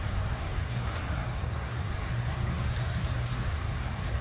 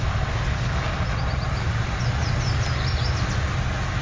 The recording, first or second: second